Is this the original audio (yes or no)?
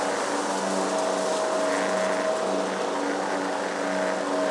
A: yes